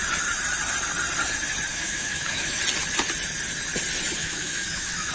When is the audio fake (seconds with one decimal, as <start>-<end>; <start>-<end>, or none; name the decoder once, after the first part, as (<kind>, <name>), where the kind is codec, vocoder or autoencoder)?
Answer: 1.7-2.6 (autoencoder, DAC-VAE); 4.2-5.1